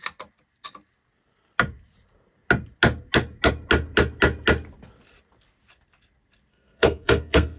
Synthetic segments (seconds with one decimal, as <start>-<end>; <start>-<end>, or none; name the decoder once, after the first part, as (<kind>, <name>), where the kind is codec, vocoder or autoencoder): 6.5-7.6 (codec, SNAC)